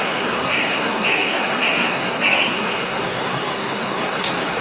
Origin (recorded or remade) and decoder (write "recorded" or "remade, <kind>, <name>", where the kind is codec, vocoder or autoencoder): remade, codec, SNAC